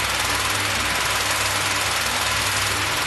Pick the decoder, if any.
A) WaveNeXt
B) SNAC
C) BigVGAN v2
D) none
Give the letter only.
D